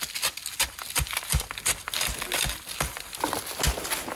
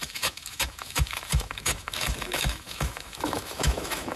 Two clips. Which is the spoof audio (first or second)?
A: second